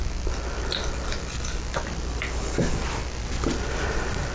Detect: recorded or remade recorded